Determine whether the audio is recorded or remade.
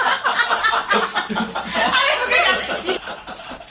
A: recorded